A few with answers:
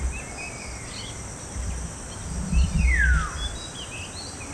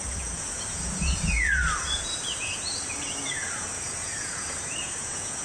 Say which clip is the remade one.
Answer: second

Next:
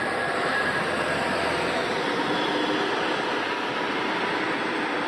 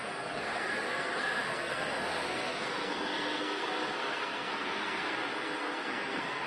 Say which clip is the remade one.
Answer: second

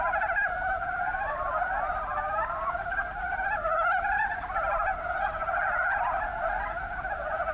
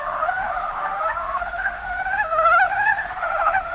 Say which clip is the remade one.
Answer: second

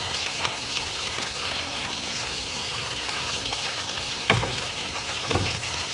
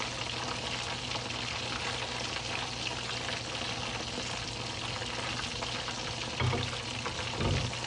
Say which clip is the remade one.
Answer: first